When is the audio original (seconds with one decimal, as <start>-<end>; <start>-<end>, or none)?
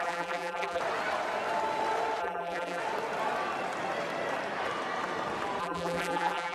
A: 0.8-2.2; 2.8-5.6